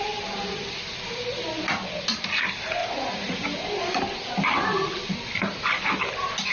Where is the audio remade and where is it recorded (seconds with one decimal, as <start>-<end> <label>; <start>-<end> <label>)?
0.0-2.8 recorded; 2.8-3.4 remade; 3.4-6.5 recorded